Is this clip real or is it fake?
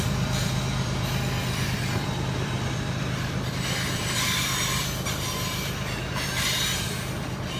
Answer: fake